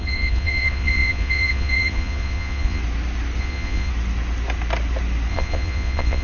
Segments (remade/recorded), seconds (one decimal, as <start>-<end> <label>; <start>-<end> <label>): 0.0-2.8 remade; 2.8-3.4 recorded; 3.4-3.9 remade; 3.9-5.3 recorded; 5.3-6.2 remade